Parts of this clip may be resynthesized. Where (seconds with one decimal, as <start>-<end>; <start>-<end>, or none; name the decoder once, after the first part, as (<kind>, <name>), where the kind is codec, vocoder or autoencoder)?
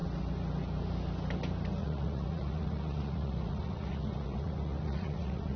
1.8-5.6 (vocoder, Vocos)